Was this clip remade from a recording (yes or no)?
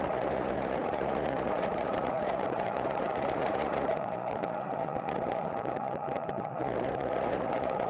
yes